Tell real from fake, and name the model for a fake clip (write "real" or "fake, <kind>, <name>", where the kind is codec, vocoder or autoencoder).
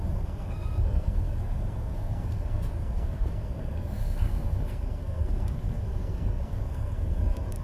fake, codec, SNAC